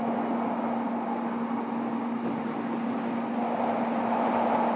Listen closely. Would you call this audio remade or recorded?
recorded